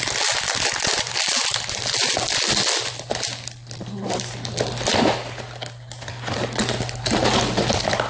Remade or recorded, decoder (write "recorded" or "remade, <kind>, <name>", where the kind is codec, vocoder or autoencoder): recorded